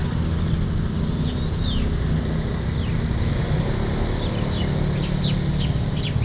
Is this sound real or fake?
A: real